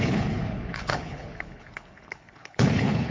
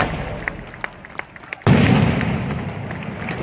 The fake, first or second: first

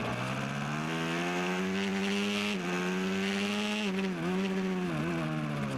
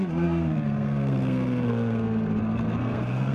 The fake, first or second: second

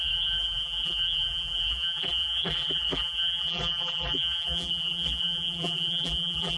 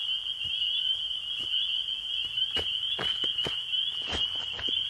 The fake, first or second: first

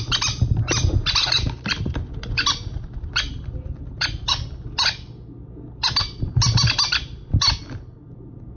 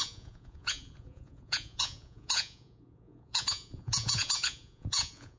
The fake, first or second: second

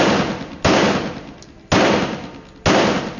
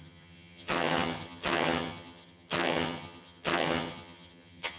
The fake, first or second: second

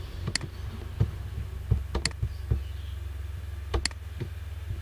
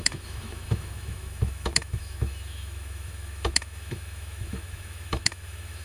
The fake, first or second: second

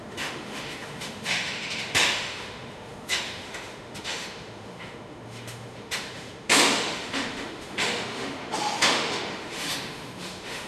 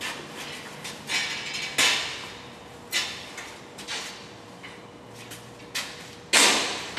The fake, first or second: first